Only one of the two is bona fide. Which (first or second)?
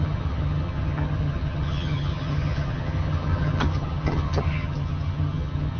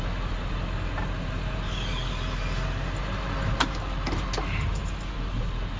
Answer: second